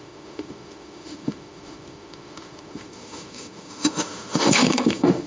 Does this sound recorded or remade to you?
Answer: remade